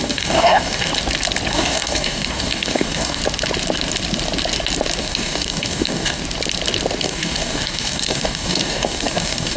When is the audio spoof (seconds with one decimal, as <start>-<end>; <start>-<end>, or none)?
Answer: 0.0-0.9; 1.5-3.2; 5.0-6.2; 7.0-9.6